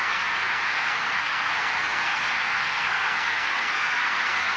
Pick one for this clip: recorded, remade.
remade